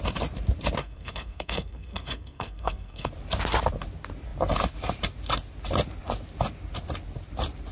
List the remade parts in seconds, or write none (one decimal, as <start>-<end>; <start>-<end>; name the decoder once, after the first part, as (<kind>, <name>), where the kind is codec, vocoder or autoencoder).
0.8-3.1 (codec, SNAC)